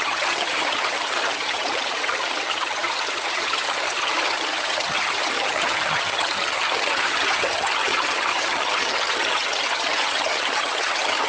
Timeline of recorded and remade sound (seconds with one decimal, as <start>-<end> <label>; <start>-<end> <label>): 0.0-11.3 remade